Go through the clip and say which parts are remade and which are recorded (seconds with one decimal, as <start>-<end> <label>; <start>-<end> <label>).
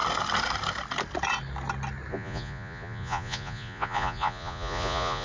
0.0-2.1 recorded; 2.1-5.2 remade